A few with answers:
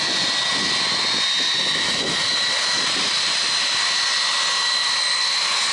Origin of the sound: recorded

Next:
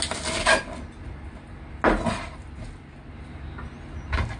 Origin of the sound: recorded